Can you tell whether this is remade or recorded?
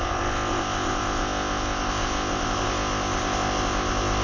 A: remade